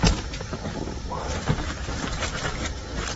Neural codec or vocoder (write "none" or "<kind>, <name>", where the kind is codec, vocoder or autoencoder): vocoder, BigVGAN v2